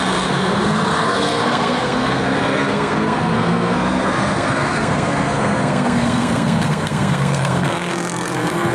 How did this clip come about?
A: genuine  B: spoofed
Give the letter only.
B